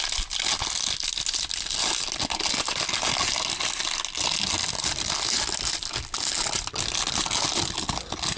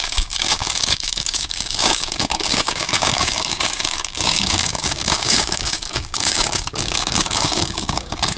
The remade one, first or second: second